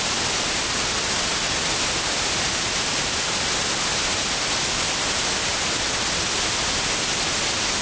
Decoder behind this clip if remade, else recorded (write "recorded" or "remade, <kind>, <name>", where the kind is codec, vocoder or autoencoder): recorded